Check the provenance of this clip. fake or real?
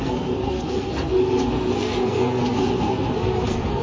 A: fake